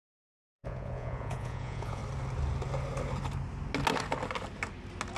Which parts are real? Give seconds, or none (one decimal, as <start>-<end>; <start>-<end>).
2.0-5.2